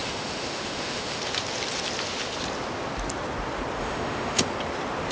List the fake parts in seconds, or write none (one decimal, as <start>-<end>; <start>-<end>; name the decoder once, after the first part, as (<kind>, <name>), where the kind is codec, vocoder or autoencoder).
0.0-1.2 (autoencoder, DAC-VAE); 3.8-4.4